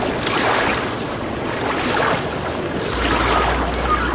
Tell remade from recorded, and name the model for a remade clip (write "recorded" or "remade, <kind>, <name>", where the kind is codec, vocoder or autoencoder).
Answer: remade, vocoder, BigVGAN v2